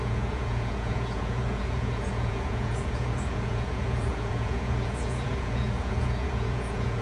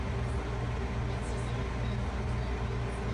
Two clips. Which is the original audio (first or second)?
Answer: second